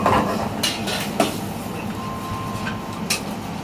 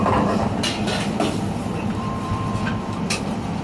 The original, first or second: first